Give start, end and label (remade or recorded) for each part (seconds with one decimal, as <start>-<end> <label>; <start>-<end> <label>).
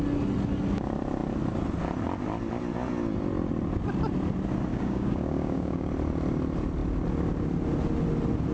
0.0-4.7 recorded; 4.7-5.9 remade; 5.9-8.5 recorded